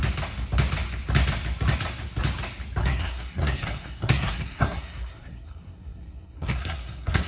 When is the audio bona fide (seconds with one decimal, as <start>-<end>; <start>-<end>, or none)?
0.0-2.8